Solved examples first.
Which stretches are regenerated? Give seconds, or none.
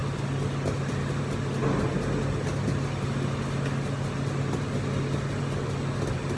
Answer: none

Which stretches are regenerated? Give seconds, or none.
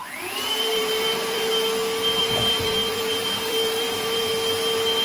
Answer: 0.0-1.5 (vocoder, BigVGAN v2); 2.2-4.3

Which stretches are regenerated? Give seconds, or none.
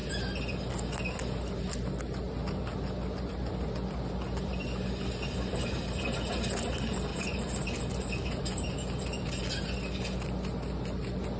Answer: 7.1-9.4 (vocoder, BigVGAN v2)